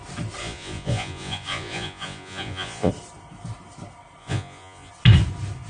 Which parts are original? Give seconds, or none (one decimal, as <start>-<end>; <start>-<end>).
0.0-0.4; 2.9-4.2; 4.9-5.7